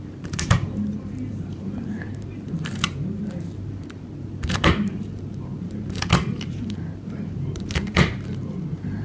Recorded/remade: remade